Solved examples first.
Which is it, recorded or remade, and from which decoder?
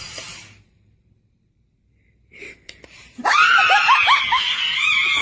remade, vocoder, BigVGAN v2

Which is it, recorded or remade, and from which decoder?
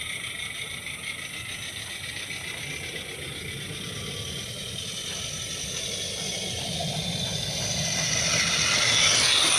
recorded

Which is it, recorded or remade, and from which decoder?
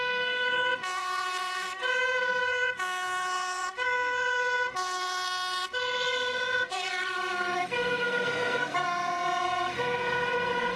remade, codec, SNAC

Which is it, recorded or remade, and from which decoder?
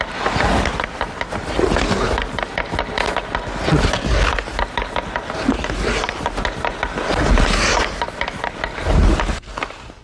recorded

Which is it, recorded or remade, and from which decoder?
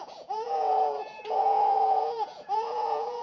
remade, vocoder, Vocos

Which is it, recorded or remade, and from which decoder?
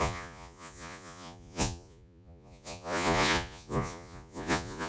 remade, vocoder, Vocos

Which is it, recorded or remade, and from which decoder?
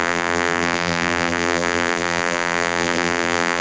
remade, vocoder, BigVGAN v2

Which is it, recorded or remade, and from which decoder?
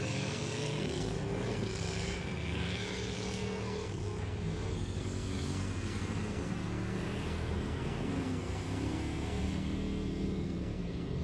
remade, codec, SNAC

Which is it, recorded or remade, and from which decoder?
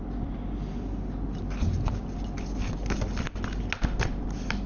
recorded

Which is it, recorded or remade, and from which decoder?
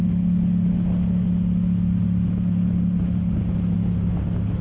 recorded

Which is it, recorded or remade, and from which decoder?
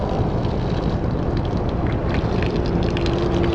remade, vocoder, BigVGAN v2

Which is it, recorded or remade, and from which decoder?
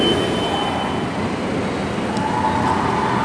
recorded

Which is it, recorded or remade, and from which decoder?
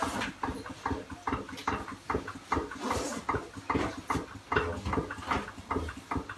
recorded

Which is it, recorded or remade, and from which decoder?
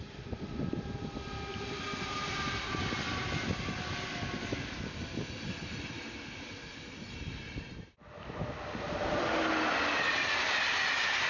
recorded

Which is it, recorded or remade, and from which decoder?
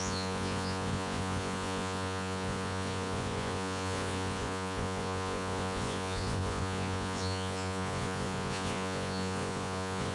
remade, vocoder, Vocos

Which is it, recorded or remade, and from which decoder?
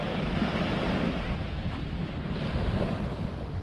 recorded